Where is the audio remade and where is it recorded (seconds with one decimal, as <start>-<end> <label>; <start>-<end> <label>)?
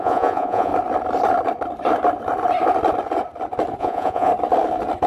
0.0-0.7 remade; 0.7-3.8 recorded; 3.8-4.3 remade; 4.3-5.1 recorded